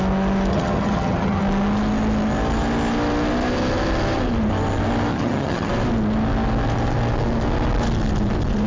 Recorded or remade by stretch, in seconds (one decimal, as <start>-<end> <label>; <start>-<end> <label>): 0.0-0.5 recorded; 0.5-1.4 remade; 1.4-5.1 recorded; 5.1-5.7 remade; 5.7-8.7 recorded